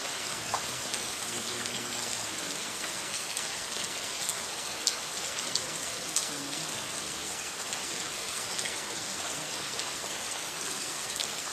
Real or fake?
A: fake